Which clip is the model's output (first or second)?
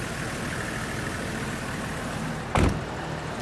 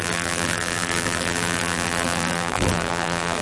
second